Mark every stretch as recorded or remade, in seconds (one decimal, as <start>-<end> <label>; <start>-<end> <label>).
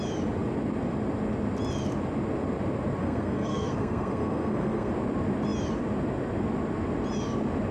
0.0-3.0 recorded; 3.0-4.9 remade; 4.9-7.7 recorded